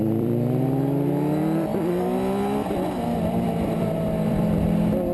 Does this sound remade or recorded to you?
remade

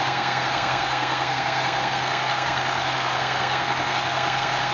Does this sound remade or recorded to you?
remade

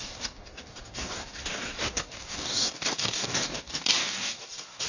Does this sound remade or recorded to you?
remade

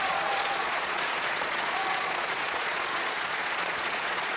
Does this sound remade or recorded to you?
remade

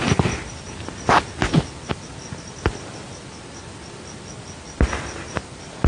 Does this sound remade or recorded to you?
recorded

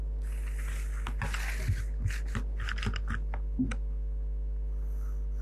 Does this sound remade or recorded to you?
recorded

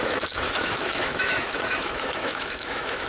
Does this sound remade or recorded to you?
remade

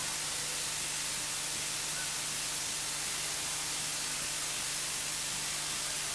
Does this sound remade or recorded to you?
recorded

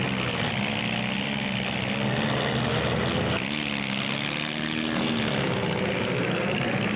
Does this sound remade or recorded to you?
recorded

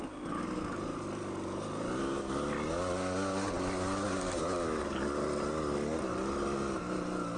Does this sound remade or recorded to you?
recorded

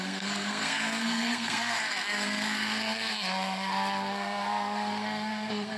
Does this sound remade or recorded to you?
remade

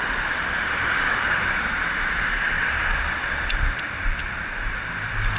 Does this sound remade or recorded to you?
remade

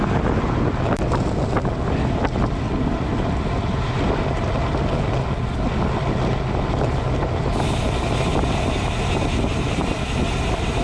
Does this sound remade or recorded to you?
recorded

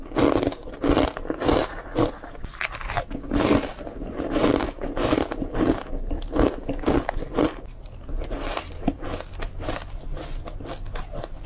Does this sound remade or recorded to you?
recorded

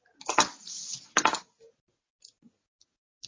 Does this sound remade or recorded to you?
recorded